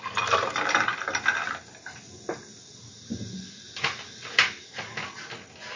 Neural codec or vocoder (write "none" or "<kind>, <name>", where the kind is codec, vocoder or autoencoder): none